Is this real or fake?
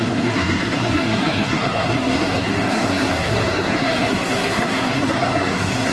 fake